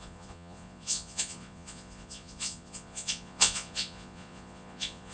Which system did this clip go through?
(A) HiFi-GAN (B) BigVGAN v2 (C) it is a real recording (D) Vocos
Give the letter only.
D